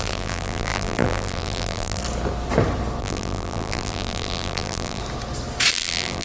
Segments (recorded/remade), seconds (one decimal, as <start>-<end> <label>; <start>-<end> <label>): 0.0-2.0 remade; 2.0-3.0 recorded; 3.0-5.0 remade; 5.0-5.7 recorded; 5.7-6.2 remade